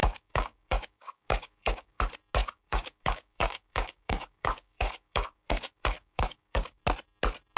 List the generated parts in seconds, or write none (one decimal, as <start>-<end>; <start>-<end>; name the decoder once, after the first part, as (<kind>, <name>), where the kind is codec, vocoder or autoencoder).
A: 0.0-2.0 (codec, DAC); 2.4-6.8